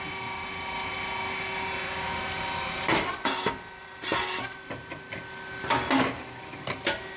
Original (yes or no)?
yes